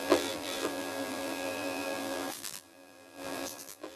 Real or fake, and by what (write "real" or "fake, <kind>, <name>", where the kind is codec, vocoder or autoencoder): fake, vocoder, BigVGAN v2